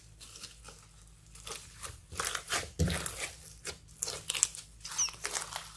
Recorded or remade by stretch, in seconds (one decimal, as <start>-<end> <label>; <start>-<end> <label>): 0.0-5.8 recorded